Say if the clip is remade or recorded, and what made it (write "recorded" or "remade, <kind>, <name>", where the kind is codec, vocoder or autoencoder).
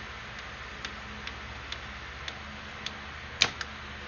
recorded